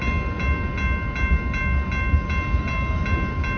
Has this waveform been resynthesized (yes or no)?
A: no